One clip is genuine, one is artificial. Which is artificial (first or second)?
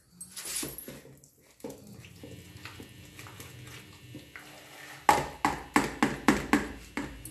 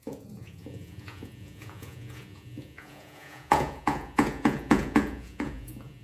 second